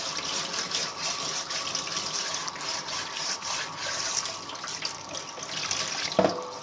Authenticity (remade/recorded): recorded